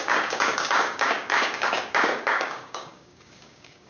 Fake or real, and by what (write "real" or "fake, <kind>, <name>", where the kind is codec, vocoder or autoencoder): fake, codec, DAC